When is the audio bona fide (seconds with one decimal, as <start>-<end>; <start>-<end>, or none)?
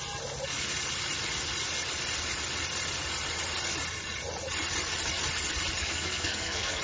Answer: 0.0-5.8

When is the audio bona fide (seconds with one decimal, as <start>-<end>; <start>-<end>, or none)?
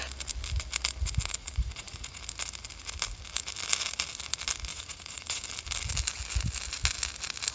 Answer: 0.0-1.4; 2.2-4.7; 5.4-7.5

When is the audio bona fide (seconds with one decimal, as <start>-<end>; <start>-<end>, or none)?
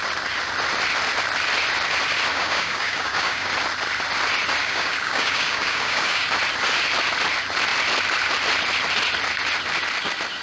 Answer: 0.0-2.3; 3.5-4.6; 6.3-10.4